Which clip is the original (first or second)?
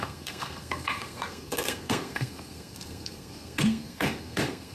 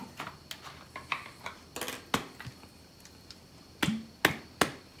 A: second